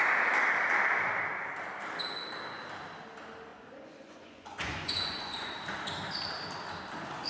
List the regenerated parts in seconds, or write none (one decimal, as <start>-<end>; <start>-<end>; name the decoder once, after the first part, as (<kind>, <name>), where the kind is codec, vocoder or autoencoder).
3.5-5.5 (vocoder, Vocos)